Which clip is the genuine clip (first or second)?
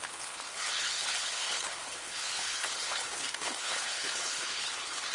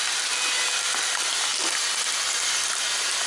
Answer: second